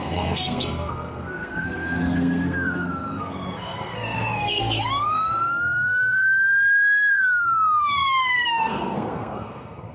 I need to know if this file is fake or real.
fake